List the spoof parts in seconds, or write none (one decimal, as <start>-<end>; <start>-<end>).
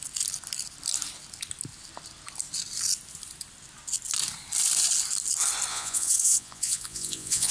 5.7-7.5